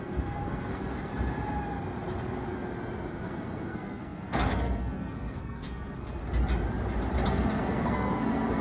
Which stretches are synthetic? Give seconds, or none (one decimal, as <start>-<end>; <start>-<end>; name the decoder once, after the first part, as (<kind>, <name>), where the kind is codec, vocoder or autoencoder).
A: 0.0-1.1 (codec, SNAC); 3.1-6.2; 7.3-8.6